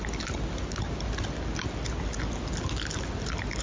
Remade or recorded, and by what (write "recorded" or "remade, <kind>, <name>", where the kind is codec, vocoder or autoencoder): recorded